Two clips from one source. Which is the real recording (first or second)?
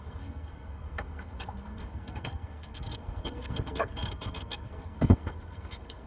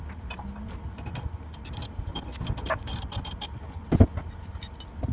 second